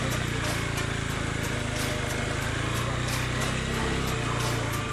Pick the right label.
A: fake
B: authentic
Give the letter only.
B